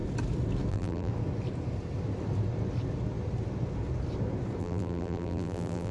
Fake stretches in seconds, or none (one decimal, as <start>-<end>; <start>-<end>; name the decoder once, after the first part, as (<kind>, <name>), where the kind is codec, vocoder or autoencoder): 0.7-1.1 (vocoder, BigVGAN v2); 4.6-5.9